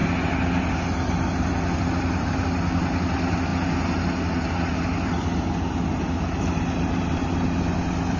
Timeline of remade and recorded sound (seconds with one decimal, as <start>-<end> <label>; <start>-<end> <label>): 0.0-8.2 recorded